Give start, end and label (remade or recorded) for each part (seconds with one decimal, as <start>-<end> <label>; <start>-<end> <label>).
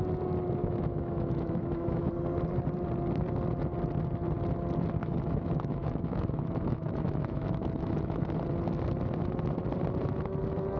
0.0-0.6 recorded; 0.6-2.1 remade; 2.1-5.0 recorded; 5.0-8.3 remade; 8.3-10.8 recorded